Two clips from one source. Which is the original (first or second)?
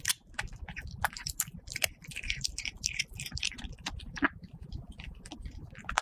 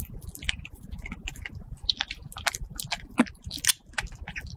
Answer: second